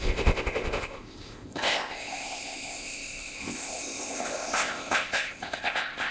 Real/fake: fake